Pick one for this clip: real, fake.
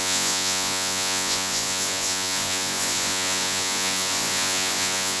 fake